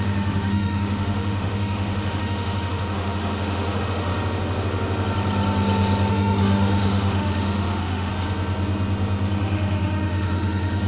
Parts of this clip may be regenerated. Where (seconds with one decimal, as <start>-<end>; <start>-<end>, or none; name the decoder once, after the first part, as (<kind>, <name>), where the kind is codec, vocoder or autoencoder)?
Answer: 0.0-4.1 (autoencoder, DAC-VAE); 6.1-8.1; 9.4-10.9